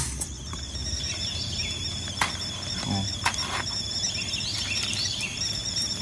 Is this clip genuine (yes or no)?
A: yes